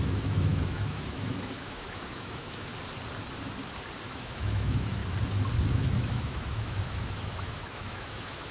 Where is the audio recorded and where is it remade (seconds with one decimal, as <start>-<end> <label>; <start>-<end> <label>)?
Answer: 0.0-2.7 remade; 2.7-4.1 recorded; 4.1-5.0 remade; 5.0-5.7 recorded; 5.7-8.5 remade